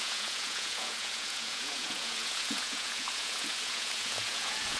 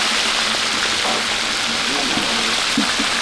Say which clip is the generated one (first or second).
first